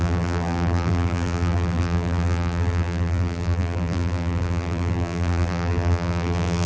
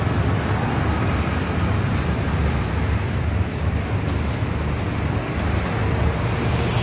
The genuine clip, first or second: second